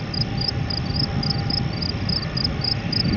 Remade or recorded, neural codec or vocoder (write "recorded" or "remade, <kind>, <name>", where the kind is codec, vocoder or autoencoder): recorded